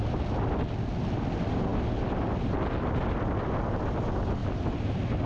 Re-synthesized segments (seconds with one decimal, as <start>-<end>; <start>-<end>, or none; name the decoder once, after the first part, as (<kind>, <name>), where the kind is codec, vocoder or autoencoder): 1.7-3.4 (vocoder, BigVGAN v2)

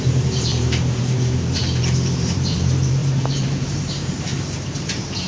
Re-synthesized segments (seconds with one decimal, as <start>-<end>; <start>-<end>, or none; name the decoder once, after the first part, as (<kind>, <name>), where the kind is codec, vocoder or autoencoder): 0.0-5.3 (vocoder, BigVGAN v2)

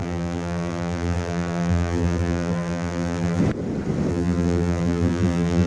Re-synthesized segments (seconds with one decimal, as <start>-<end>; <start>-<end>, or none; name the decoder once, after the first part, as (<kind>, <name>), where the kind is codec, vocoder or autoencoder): 0.0-3.4 (vocoder, BigVGAN v2); 4.1-5.7

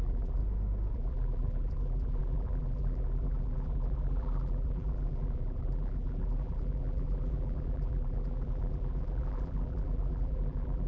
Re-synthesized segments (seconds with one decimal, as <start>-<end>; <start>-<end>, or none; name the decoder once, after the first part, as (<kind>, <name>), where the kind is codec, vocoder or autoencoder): 0.0-0.4 (vocoder, BigVGAN v2); 0.9-10.9

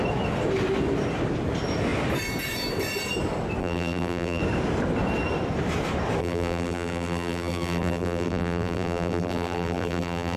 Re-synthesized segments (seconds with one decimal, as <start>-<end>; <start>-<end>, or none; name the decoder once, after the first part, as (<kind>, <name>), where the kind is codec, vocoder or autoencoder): 3.6-4.4 (vocoder, BigVGAN v2); 6.2-10.4

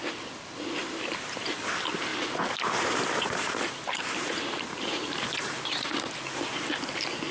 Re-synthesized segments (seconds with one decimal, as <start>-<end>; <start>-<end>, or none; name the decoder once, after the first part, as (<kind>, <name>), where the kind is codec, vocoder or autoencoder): 0.8-1.6 (vocoder, BigVGAN v2); 2.1-6.5

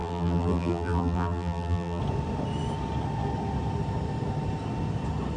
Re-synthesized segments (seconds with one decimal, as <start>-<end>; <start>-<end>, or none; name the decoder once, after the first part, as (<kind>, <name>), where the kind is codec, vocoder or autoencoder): 0.0-2.0 (vocoder, BigVGAN v2)